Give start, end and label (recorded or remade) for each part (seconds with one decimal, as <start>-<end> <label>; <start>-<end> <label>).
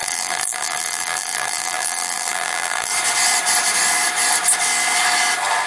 0.0-2.9 remade; 2.9-5.7 recorded